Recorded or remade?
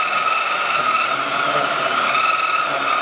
recorded